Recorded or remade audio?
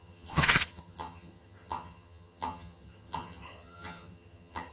remade